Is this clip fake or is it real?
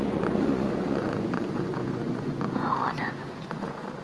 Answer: fake